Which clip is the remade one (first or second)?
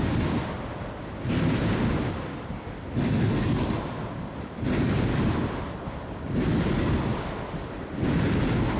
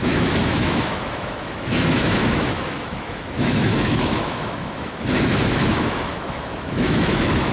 second